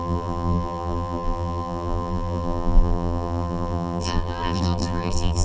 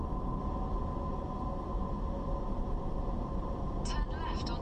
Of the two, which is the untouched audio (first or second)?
second